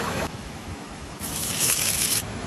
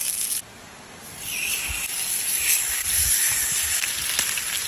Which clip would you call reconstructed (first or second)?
first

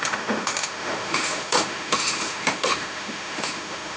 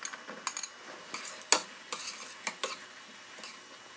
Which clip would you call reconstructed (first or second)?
first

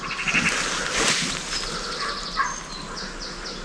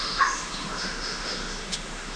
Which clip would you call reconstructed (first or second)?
second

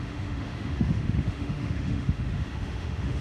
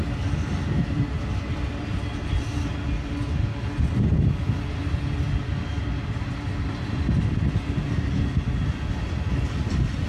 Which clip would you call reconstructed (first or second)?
first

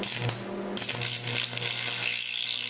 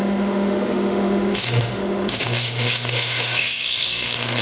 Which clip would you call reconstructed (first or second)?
second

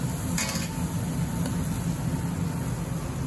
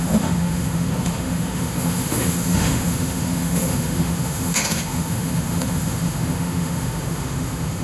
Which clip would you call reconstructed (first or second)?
second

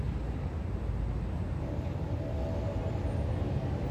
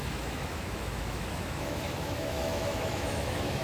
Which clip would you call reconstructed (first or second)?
second